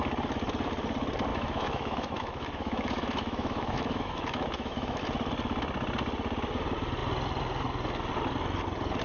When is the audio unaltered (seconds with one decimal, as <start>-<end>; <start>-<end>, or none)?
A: 0.0-1.3; 5.0-9.0

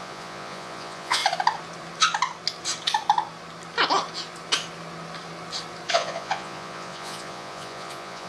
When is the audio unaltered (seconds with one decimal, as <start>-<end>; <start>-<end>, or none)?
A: 1.2-5.9